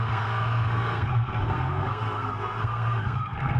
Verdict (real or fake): fake